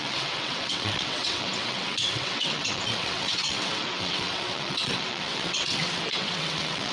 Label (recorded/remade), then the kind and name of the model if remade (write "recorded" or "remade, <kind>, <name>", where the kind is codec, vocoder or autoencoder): remade, vocoder, WaveNeXt